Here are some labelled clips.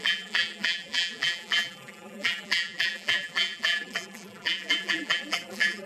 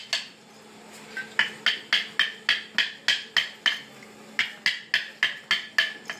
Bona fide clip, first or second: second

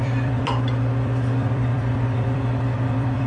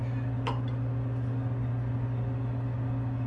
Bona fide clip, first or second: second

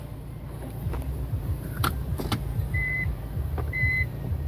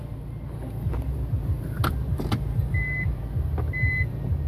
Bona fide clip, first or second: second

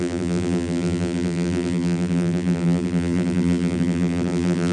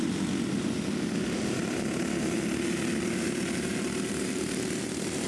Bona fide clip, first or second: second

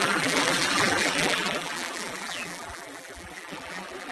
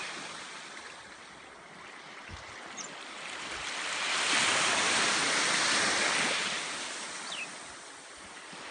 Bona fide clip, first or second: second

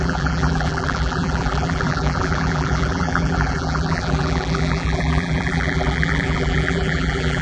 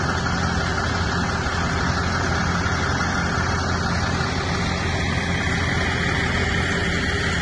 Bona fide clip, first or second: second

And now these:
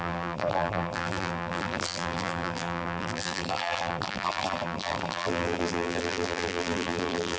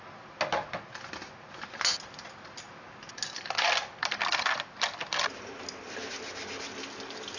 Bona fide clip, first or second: second